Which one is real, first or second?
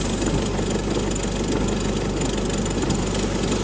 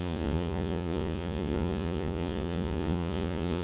first